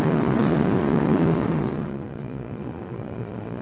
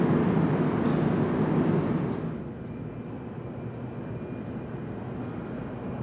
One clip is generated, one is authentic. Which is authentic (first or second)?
second